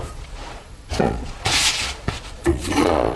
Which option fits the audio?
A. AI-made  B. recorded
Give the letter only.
A